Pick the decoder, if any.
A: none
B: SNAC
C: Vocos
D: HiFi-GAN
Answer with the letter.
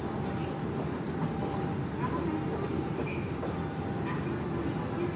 A